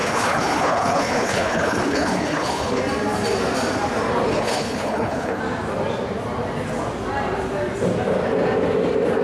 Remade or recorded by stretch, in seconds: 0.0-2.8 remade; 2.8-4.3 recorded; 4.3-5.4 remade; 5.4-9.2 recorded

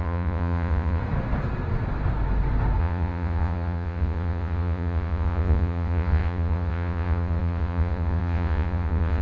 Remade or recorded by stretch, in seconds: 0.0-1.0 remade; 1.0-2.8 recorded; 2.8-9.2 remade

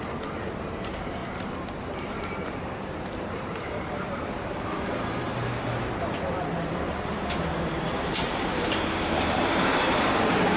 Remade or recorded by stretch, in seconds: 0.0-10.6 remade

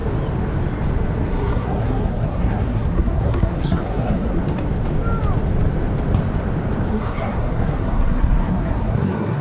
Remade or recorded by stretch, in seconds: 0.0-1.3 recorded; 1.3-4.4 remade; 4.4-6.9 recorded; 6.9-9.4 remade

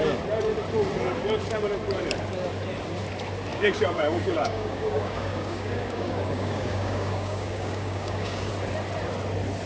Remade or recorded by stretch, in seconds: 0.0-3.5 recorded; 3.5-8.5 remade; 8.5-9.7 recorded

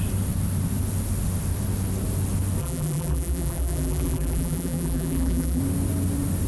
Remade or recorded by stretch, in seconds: 0.0-2.6 recorded; 2.6-5.6 remade; 5.6-6.5 recorded

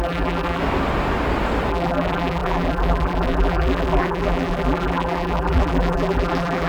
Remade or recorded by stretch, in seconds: 0.0-0.6 remade; 0.6-1.7 recorded; 1.7-6.7 remade

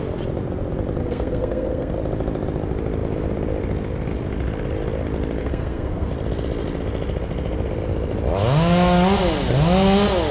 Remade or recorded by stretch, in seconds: 0.0-1.0 recorded; 1.0-1.9 remade; 1.9-5.4 recorded; 5.4-6.1 remade; 6.1-10.3 recorded